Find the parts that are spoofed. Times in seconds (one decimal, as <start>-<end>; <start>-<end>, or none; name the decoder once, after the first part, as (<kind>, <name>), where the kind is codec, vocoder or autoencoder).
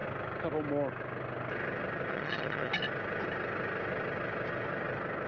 2.1-2.7 (vocoder, HiFi-GAN)